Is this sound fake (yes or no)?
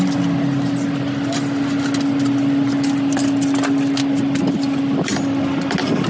no